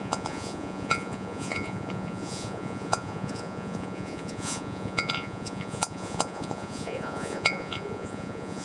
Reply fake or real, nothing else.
fake